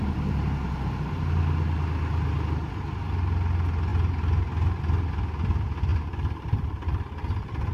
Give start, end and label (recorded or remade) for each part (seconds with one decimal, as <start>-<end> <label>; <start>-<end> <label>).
0.0-7.7 recorded